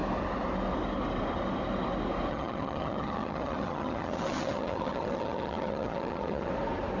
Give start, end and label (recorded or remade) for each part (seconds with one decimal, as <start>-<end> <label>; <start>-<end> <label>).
0.0-2.3 recorded; 2.3-6.5 remade; 6.5-7.0 recorded